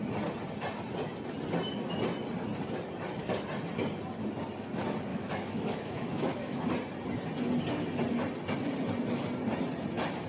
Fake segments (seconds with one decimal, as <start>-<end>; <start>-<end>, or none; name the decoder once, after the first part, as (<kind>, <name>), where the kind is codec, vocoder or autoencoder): 5.1-6.7 (autoencoder, DAC-VAE)